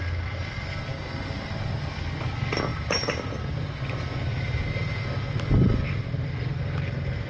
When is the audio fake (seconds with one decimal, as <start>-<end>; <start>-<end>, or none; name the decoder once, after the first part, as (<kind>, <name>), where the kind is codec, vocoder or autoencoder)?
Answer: 2.7-7.3 (vocoder, BigVGAN v2)